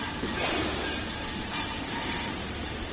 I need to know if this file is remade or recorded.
remade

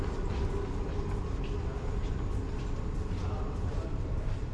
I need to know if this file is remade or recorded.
recorded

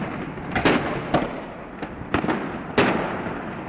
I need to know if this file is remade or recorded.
recorded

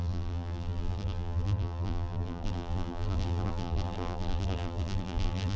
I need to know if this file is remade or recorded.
remade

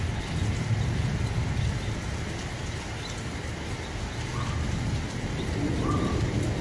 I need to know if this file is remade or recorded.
recorded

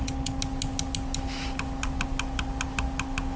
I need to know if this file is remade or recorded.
recorded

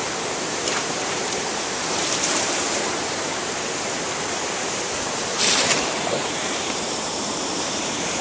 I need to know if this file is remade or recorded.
remade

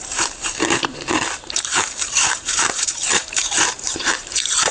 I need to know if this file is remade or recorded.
remade